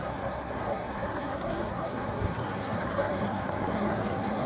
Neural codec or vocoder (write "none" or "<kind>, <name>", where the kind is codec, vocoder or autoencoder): codec, SNAC